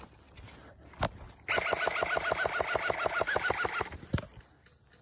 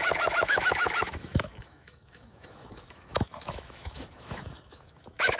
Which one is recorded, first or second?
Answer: first